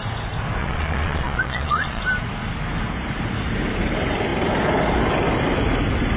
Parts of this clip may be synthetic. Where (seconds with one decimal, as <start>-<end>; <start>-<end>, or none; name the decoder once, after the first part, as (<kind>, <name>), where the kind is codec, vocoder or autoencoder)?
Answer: 0.6-2.0 (vocoder, Vocos)